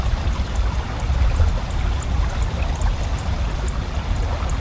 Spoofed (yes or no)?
no